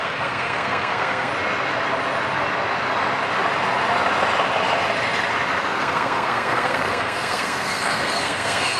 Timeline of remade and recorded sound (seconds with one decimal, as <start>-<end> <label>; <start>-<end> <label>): 0.0-1.3 remade; 1.3-5.8 recorded; 5.8-8.8 remade